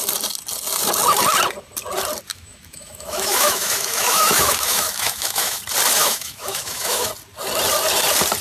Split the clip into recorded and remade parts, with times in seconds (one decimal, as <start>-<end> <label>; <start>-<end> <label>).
0.0-2.3 recorded; 2.3-5.6 remade; 5.6-6.0 recorded; 6.0-7.1 remade; 7.1-8.4 recorded